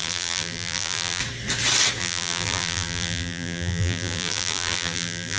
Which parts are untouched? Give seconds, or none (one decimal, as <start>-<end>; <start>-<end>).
1.2-2.0